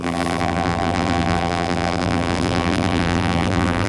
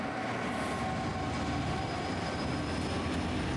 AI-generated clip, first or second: first